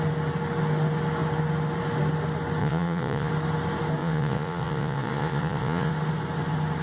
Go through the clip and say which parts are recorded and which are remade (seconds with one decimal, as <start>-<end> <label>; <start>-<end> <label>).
0.0-2.6 recorded; 2.6-3.3 remade; 3.3-4.0 recorded; 4.0-5.9 remade; 5.9-6.8 recorded